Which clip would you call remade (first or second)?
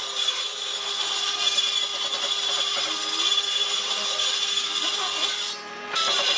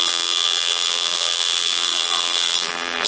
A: second